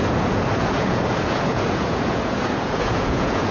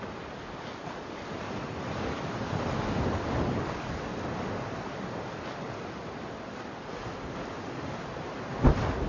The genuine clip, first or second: second